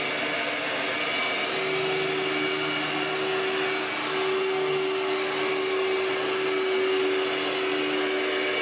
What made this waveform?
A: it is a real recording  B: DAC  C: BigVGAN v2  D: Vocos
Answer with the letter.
A